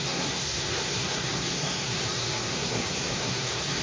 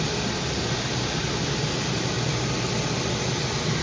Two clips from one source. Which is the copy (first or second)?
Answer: first